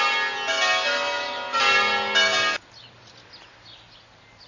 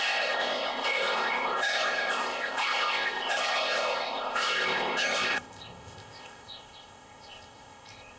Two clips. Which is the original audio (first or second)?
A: first